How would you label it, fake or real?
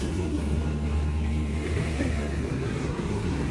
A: fake